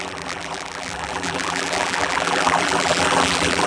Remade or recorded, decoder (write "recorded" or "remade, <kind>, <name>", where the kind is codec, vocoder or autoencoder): remade, vocoder, BigVGAN v2